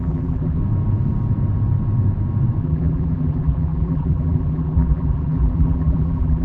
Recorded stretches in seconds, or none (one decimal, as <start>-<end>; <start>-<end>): 0.6-2.6